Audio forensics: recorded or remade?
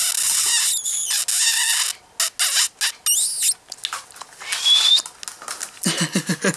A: recorded